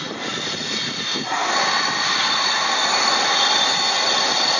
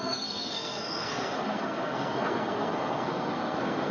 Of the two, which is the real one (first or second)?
first